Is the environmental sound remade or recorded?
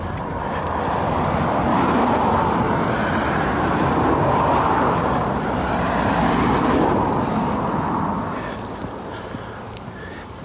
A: recorded